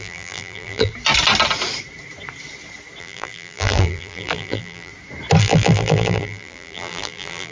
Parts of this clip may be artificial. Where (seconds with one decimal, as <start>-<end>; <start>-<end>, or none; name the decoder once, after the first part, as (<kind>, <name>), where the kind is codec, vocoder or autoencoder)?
0.0-0.9 (vocoder, BigVGAN v2); 3.0-4.9; 5.4-7.5